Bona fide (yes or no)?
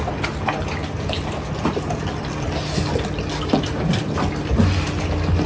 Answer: yes